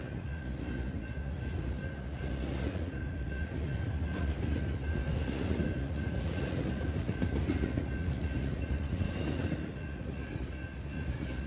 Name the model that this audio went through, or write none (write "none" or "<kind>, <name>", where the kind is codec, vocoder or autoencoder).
vocoder, Vocos